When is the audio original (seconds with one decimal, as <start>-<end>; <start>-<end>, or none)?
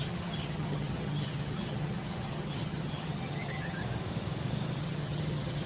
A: 3.8-4.8